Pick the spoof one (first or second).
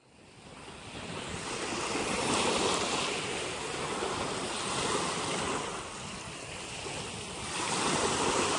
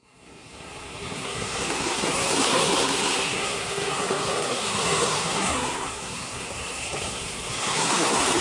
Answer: second